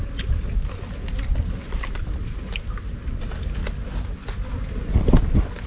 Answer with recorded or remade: recorded